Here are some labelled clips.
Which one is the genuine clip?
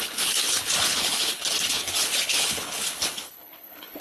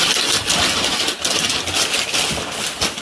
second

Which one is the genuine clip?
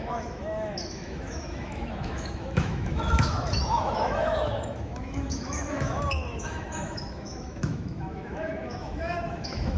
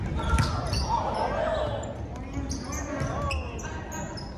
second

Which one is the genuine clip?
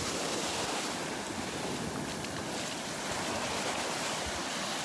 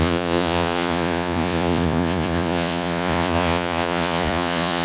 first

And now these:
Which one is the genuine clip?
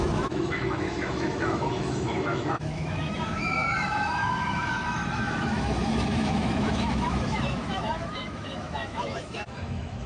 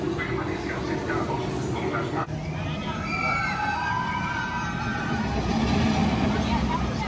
second